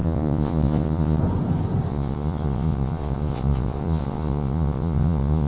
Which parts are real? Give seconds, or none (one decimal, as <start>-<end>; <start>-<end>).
1.2-1.9